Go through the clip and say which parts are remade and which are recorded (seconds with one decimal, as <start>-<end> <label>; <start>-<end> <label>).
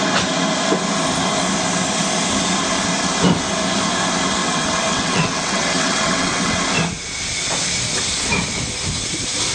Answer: 0.0-4.4 recorded; 4.4-6.6 remade; 6.6-9.5 recorded